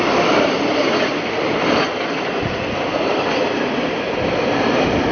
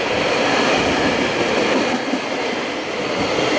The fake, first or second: first